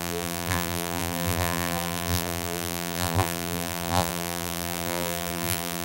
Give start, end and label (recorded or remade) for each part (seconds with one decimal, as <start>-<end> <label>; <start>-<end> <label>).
0.0-5.8 remade